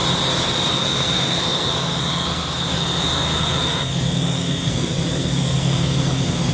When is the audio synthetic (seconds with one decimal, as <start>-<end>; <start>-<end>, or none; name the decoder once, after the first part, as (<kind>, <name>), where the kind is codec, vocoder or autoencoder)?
0.7-6.5 (codec, SNAC)